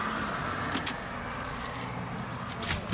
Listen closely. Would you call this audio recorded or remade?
recorded